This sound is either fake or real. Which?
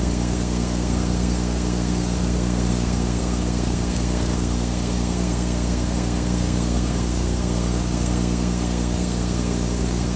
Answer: fake